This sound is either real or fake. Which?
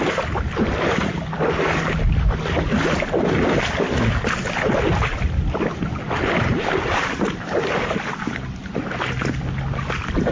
real